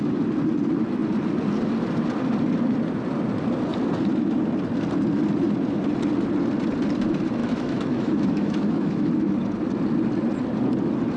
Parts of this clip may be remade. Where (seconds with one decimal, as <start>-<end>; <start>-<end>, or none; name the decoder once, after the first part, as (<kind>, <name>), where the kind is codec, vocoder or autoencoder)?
7.4-9.1 (autoencoder, DAC-VAE)